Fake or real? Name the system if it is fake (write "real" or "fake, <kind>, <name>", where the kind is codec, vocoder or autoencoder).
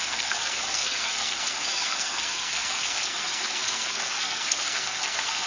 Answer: fake, codec, SNAC